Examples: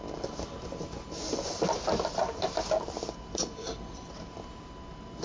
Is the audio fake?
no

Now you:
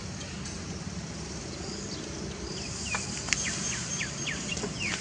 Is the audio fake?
no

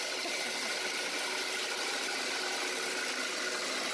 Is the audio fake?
no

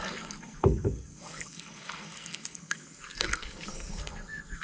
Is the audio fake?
yes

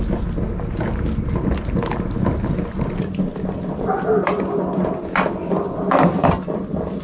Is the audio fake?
no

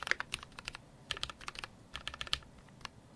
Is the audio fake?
no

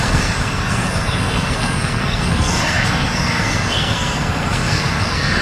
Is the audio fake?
yes